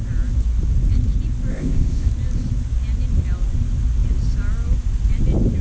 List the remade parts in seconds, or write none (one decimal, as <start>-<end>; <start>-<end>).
1.5-2.1